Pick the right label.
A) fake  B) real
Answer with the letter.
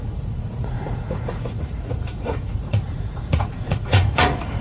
A